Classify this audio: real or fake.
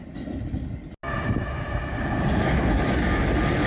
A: real